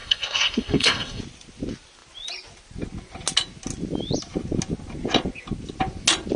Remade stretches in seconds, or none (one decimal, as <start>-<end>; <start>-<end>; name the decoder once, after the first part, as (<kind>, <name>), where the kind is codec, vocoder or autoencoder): 0.0-1.2 (codec, SNAC)